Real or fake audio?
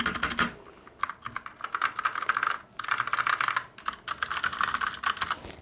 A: real